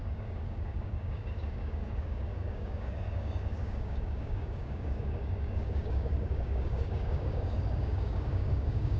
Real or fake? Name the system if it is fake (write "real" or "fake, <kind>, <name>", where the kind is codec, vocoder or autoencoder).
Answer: fake, codec, DAC